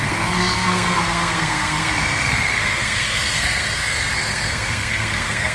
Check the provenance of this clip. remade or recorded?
remade